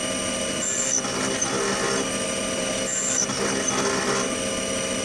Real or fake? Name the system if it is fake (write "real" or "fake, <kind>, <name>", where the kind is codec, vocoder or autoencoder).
real